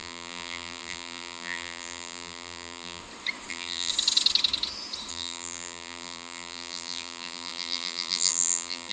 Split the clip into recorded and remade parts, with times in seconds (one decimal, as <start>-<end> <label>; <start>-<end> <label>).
0.0-3.0 remade; 3.0-3.5 recorded; 3.5-3.9 remade; 3.9-5.1 recorded; 5.1-8.9 remade